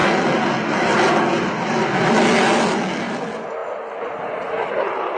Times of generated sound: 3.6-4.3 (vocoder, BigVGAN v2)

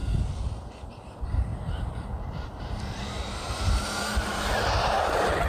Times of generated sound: 1.5-4.8 (vocoder, BigVGAN v2)